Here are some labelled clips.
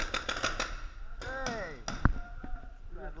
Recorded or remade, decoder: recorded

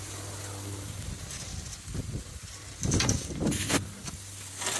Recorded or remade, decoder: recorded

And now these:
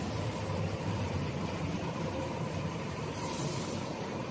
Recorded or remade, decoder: remade, vocoder, BigVGAN v2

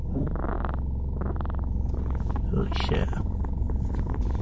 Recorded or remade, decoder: recorded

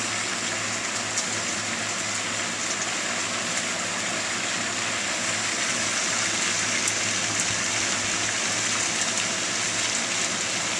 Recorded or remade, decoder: recorded